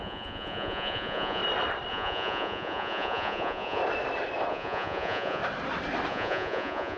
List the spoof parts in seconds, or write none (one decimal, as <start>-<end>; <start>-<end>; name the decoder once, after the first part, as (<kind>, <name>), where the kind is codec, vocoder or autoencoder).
0.0-1.4 (vocoder, Vocos); 1.9-3.8; 4.5-5.4; 6.1-7.0